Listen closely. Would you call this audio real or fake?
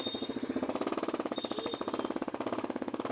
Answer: real